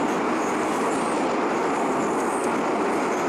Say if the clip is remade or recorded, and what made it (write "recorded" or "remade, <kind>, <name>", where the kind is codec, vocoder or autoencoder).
recorded